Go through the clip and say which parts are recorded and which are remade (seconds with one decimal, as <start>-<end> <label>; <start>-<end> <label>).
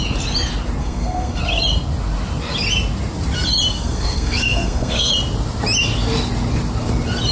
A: 0.0-0.8 recorded; 0.8-1.4 remade; 1.4-3.7 recorded; 3.7-5.1 remade; 5.1-7.3 recorded